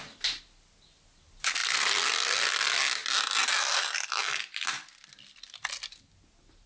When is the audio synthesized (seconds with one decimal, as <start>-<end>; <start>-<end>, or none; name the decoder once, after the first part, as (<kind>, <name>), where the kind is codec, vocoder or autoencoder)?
none